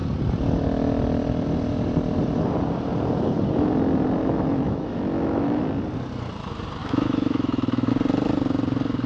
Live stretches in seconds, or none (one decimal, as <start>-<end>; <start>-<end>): 0.0-4.2; 5.6-6.8; 7.9-9.1

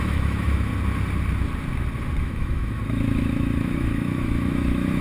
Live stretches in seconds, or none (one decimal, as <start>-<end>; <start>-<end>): 0.7-2.2